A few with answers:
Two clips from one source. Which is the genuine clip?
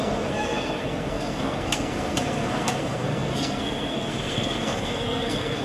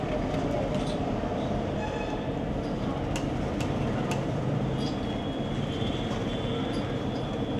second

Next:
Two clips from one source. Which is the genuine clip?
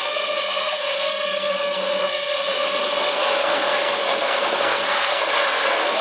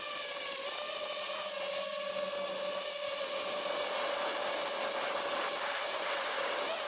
second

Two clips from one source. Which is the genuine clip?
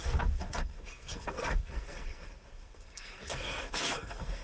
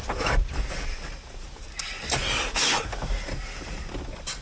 second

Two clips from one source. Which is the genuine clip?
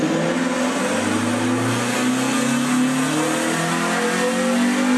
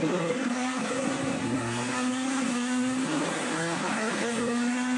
first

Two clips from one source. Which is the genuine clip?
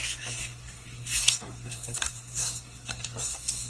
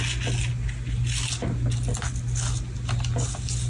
second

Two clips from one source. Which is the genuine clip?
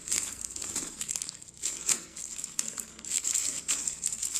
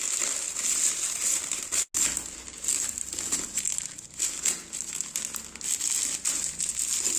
second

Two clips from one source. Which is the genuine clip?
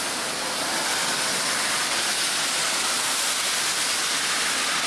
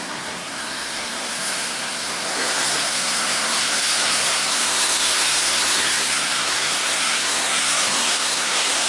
first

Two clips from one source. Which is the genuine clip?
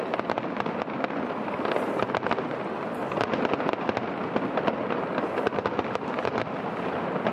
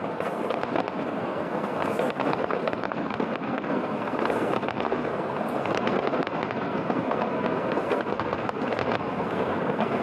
first